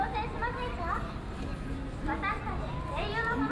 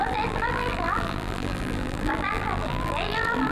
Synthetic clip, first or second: second